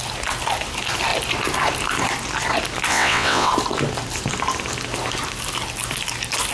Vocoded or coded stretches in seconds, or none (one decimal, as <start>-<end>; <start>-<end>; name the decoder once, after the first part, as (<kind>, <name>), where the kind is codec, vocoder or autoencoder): 2.9-3.5 (vocoder, WaveNeXt)

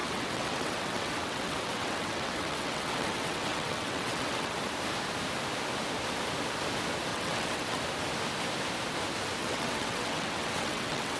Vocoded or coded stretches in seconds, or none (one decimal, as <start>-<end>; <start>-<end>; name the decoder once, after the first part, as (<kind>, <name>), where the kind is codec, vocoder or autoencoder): 0.0-4.6 (vocoder, WaveNeXt); 7.1-7.8; 9.4-11.2

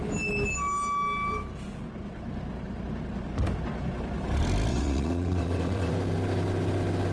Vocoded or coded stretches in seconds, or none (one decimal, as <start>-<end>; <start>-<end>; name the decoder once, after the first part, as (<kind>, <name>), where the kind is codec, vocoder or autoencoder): 4.7-5.9 (vocoder, WaveNeXt)

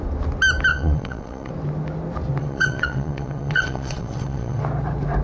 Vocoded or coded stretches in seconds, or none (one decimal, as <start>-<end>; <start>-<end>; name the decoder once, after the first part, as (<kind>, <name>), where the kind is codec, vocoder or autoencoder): 0.7-1.5 (vocoder, WaveNeXt); 2.4-4.6

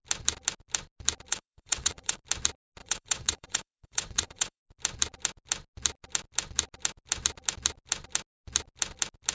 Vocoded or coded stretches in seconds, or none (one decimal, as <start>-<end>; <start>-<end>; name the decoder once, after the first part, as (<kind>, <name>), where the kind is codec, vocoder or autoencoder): 1.3-2.2 (vocoder, WaveNeXt); 2.8-4.6

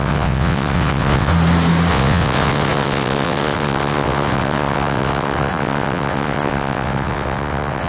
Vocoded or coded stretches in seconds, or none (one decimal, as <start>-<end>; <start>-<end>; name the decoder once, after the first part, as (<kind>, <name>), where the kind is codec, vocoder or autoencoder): 0.0-1.3 (vocoder, WaveNeXt); 1.9-7.9

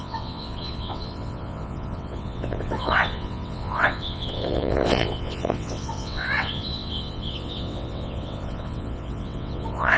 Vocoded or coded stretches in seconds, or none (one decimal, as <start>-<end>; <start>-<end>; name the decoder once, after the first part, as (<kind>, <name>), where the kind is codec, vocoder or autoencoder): 0.0-10.0 (vocoder, WaveNeXt)